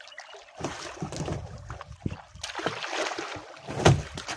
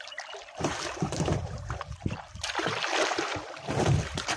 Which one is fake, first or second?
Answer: second